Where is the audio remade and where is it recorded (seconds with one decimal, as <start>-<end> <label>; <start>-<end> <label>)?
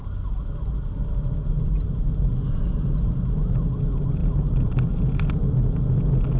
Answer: 0.0-4.2 recorded; 4.2-5.3 remade; 5.3-6.4 recorded